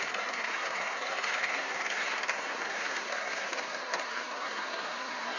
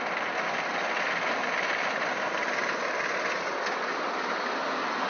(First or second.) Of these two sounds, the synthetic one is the first